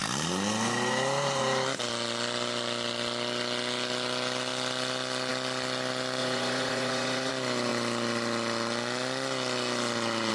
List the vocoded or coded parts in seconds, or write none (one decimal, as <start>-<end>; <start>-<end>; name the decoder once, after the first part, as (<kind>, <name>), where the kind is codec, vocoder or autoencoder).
6.2-7.3 (vocoder, Vocos)